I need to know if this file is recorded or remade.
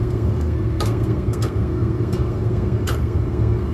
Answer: remade